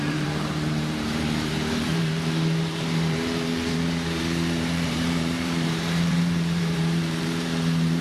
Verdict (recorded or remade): remade